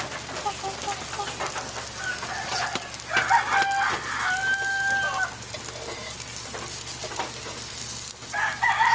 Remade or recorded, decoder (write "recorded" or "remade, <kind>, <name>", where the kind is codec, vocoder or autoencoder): recorded